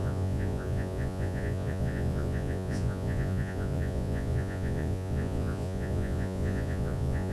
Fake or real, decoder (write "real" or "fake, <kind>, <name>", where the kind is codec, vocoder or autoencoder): fake, vocoder, Vocos